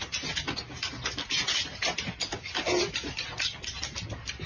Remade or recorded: recorded